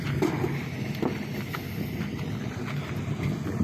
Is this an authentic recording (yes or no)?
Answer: yes